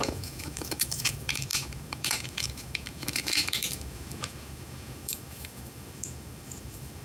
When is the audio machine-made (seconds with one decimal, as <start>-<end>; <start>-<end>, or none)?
0.0-7.0